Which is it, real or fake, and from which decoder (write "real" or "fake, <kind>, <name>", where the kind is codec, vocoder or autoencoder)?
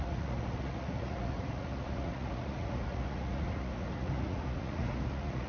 fake, vocoder, Vocos